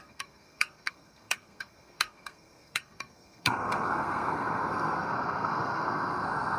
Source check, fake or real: fake